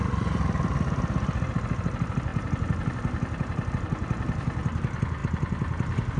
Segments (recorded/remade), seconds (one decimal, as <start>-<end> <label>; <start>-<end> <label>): 0.0-6.2 recorded